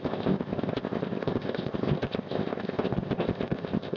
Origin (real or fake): fake